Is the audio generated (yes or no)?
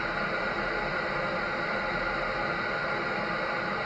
yes